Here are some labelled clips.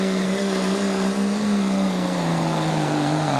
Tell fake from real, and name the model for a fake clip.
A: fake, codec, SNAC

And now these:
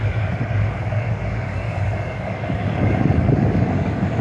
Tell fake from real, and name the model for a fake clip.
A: fake, codec, DAC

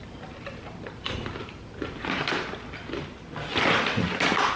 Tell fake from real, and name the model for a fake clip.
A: real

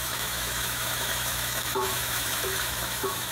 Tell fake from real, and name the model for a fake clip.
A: fake, autoencoder, DAC-VAE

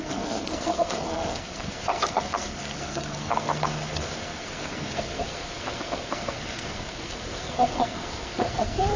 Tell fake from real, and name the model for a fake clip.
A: fake, codec, SNAC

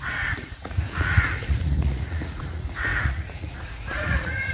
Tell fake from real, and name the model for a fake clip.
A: fake, vocoder, Vocos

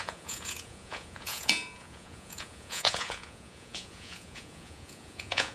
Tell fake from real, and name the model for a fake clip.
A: fake, vocoder, Vocos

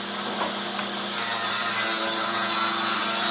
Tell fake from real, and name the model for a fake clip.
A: real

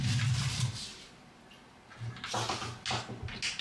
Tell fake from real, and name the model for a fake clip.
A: real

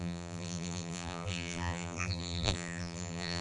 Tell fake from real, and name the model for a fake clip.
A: fake, vocoder, BigVGAN v2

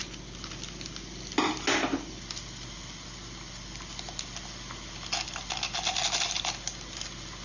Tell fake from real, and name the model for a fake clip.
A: real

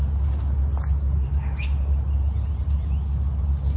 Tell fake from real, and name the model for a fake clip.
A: real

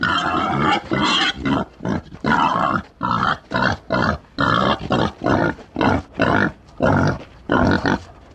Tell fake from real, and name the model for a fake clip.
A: real